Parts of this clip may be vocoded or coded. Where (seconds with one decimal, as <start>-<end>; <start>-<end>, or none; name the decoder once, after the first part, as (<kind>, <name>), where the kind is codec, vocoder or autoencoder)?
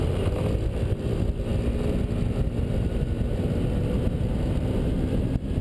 none